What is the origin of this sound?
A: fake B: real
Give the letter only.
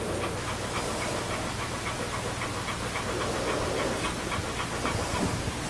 B